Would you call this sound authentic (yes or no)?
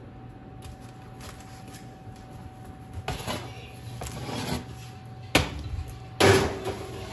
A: yes